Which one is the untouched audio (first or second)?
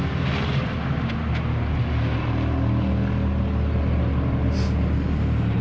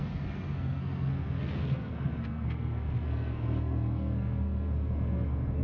first